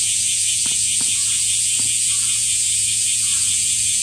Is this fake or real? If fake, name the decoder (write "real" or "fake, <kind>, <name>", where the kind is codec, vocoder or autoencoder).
fake, vocoder, Vocos